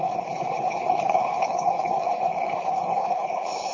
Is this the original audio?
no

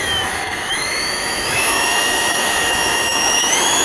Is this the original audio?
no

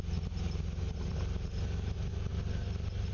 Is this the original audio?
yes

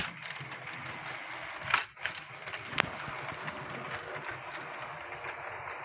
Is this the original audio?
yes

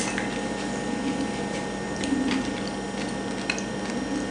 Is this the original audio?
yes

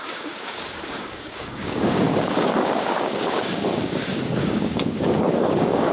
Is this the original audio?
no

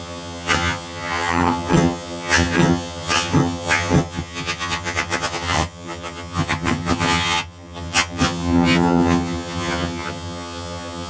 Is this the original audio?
no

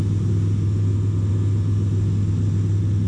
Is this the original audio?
yes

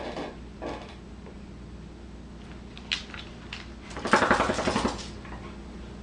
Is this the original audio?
yes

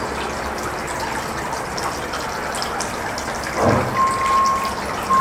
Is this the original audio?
yes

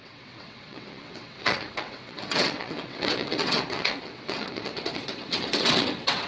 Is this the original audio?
no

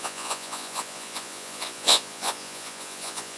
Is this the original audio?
no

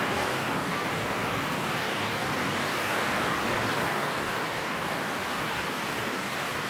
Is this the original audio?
no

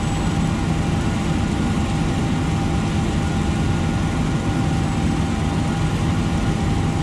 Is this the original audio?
yes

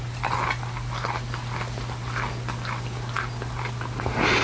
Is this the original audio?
yes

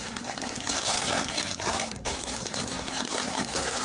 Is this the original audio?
no